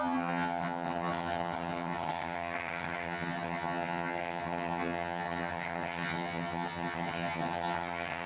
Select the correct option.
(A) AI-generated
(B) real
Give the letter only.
A